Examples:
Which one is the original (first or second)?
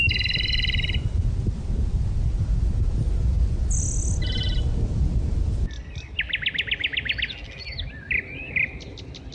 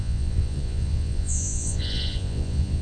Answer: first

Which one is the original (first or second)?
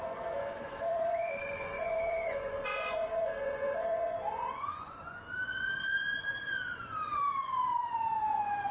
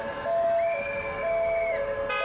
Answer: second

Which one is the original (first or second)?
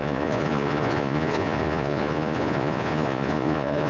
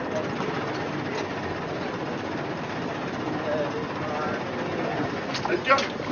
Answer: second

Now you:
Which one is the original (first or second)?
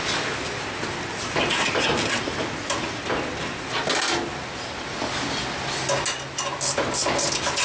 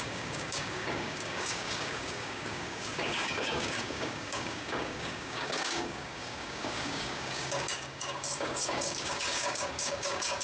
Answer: first